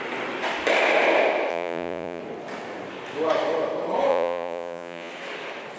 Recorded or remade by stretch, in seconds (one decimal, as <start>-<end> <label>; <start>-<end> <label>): 0.0-1.5 recorded; 1.5-2.2 remade; 2.2-4.1 recorded; 4.1-5.1 remade; 5.1-5.8 recorded

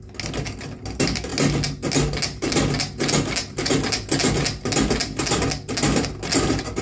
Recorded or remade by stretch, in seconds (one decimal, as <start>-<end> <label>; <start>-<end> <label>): 0.0-6.8 recorded

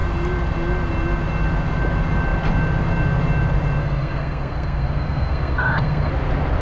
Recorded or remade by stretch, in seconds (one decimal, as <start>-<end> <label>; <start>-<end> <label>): 0.0-3.8 recorded; 3.8-6.1 remade; 6.1-6.6 recorded

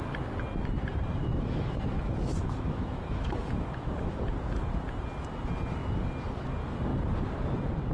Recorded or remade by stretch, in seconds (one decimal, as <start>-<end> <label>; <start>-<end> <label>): 0.0-1.2 recorded; 1.2-4.2 remade; 4.2-7.9 recorded

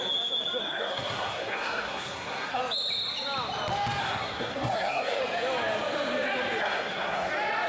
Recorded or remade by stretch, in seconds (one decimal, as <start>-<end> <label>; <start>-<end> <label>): 0.0-0.6 recorded; 0.6-2.6 remade; 2.6-4.0 recorded; 4.0-5.2 remade; 5.2-6.6 recorded; 6.6-7.3 remade; 7.3-7.7 recorded

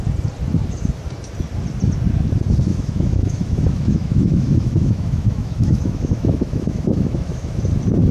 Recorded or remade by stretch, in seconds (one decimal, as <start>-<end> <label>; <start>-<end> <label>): 0.0-2.7 recorded; 2.7-7.6 remade; 7.6-8.1 recorded